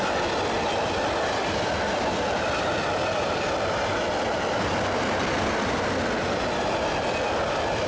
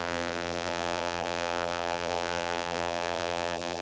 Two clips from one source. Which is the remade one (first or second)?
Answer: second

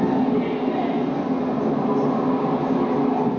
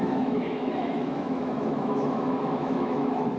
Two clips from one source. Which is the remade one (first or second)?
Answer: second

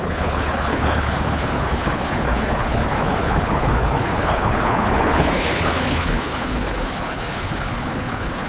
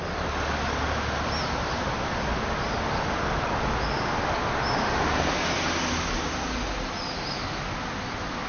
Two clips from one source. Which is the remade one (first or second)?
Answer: first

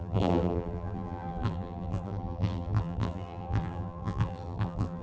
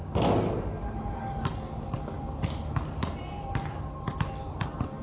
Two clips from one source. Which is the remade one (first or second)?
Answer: first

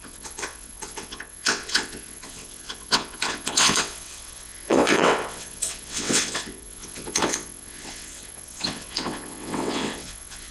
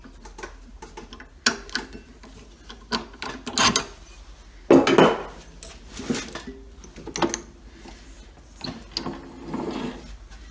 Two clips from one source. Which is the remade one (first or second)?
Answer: first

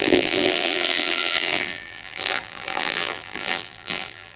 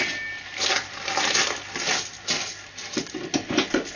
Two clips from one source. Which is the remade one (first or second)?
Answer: first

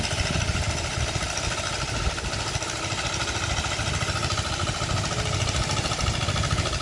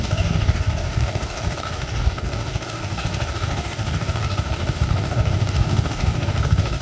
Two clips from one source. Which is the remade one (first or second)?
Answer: second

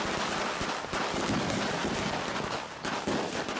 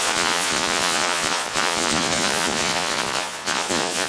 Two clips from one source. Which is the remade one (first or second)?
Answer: second